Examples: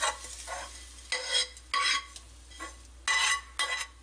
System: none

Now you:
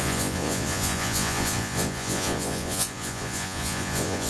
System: vocoder, Vocos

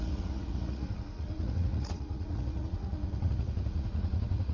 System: vocoder, Vocos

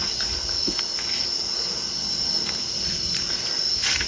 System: none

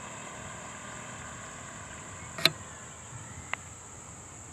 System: none